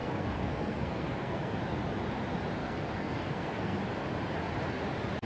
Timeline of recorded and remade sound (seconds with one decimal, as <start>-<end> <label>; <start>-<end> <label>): 0.0-1.6 remade; 1.6-2.6 recorded; 2.6-3.8 remade; 3.8-5.2 recorded